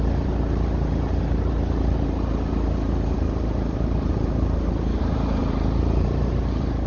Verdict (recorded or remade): remade